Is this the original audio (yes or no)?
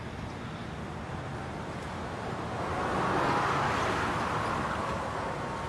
yes